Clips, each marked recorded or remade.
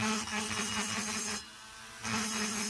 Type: recorded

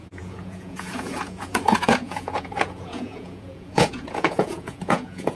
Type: remade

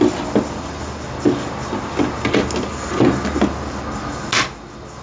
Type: recorded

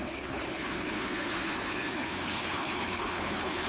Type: remade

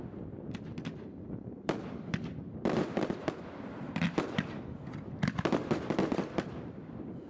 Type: remade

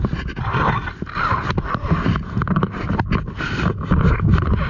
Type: recorded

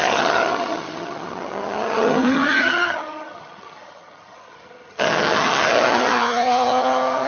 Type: remade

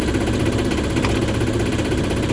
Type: recorded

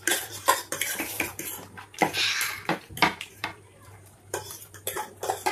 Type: remade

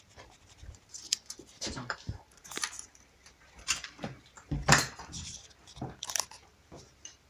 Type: remade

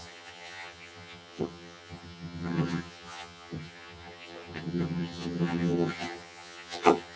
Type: remade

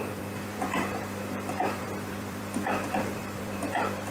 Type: remade